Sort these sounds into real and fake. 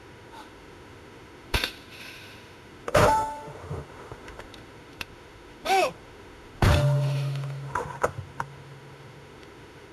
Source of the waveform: fake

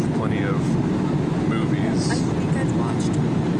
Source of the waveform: real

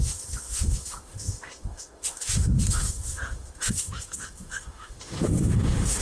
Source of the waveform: fake